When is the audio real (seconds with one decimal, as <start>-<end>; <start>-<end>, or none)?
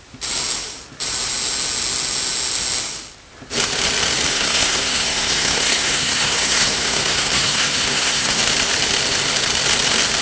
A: 0.0-4.3; 8.4-10.2